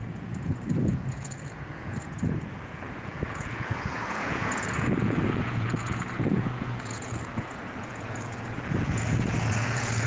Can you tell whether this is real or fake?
fake